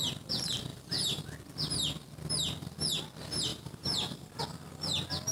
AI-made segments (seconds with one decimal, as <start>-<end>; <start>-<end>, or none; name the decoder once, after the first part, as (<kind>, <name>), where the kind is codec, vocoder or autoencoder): 0.7-1.2 (vocoder, BigVGAN v2); 3.5-4.4